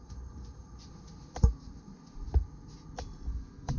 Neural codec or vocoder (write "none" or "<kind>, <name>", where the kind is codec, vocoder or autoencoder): none